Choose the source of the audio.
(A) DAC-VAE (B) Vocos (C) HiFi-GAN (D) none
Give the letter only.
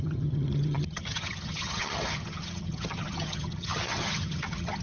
C